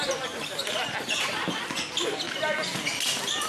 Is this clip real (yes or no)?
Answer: yes